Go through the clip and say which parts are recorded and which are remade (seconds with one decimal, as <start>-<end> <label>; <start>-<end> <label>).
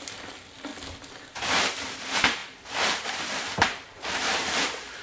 0.0-0.7 remade; 0.7-1.3 recorded; 1.3-5.0 remade